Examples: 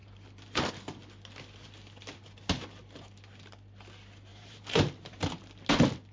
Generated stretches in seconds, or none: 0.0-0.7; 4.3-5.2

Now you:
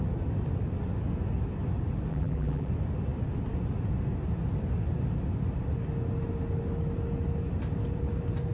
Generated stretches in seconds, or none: 2.1-2.7

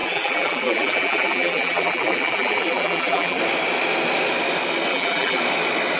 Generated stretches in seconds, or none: 0.0-3.4; 4.9-5.4

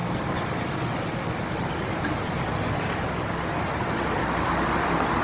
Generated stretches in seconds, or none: none

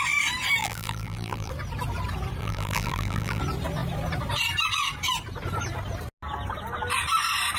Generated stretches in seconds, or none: 0.6-1.5; 2.4-3.4

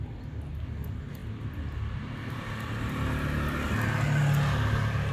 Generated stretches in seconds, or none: none

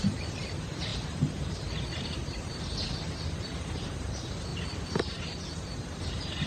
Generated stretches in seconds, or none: 0.0-4.5; 5.5-6.5